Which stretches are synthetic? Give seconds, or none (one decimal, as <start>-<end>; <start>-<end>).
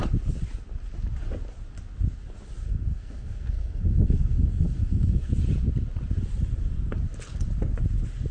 2.6-5.3